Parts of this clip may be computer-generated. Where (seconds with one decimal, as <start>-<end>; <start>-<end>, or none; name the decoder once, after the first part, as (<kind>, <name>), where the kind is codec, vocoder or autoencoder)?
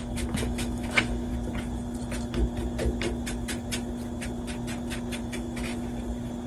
0.0-1.3 (autoencoder, DAC-VAE); 5.2-5.7